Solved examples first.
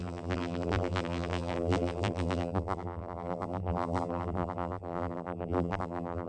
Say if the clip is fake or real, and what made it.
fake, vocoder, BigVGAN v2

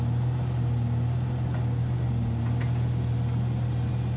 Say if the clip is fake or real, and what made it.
real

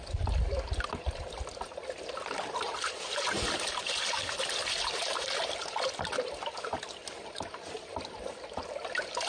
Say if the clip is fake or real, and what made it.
real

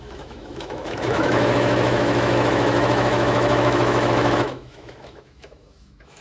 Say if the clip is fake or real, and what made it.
fake, autoencoder, DAC-VAE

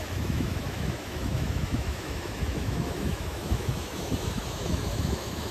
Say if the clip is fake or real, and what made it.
fake, autoencoder, DAC-VAE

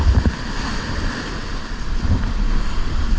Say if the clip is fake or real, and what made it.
real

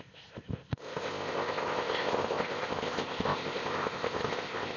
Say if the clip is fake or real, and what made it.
fake, codec, ZipCodec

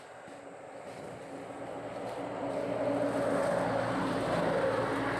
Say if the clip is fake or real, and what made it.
real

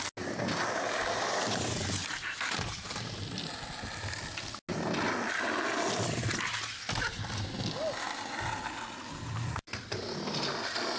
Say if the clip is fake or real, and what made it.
real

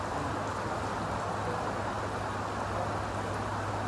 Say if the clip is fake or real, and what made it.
real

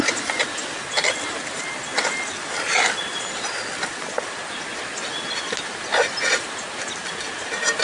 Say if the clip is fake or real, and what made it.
real